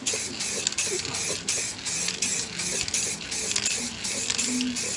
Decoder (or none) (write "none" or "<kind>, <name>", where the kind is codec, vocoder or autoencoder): none